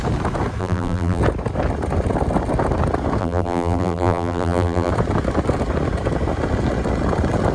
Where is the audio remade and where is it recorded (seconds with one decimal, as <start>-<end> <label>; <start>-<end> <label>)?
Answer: 0.0-0.6 recorded; 0.6-1.2 remade; 1.2-3.2 recorded; 3.2-4.9 remade; 4.9-7.5 recorded

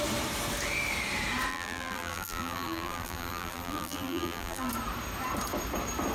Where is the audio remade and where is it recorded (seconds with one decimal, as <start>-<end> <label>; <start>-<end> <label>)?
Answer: 0.0-1.5 recorded; 1.5-4.7 remade; 4.7-6.1 recorded

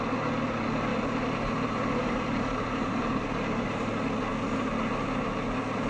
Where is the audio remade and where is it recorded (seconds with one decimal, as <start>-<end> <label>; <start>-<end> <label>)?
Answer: 0.0-0.9 recorded; 0.9-1.5 remade; 1.5-2.0 recorded; 2.0-3.9 remade; 3.9-5.9 recorded

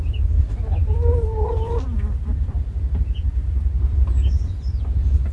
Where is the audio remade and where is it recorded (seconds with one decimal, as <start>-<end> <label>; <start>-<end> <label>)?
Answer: 0.0-5.3 remade

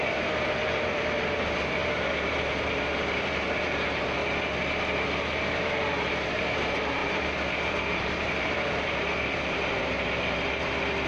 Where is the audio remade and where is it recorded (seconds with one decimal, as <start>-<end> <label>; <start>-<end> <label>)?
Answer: 0.0-4.2 remade; 4.2-5.4 recorded; 5.4-11.1 remade